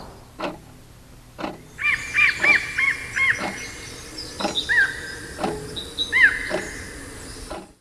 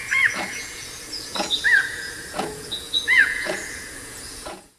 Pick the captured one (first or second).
first